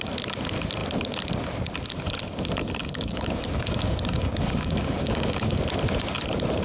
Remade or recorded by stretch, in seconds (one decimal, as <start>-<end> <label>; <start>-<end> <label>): 0.0-2.8 recorded; 2.8-5.6 remade; 5.6-6.6 recorded